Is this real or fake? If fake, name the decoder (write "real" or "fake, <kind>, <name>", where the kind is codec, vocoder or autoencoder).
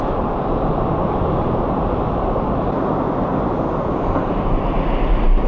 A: real